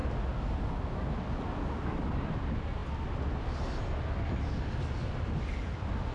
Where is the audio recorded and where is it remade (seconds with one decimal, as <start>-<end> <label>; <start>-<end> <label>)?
0.0-6.1 recorded